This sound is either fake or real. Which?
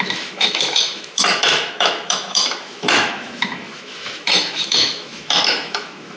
fake